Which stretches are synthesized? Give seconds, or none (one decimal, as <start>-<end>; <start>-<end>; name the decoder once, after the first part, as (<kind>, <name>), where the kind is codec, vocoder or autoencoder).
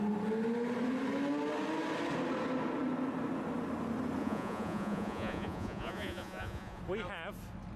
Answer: 4.2-6.8 (vocoder, Vocos)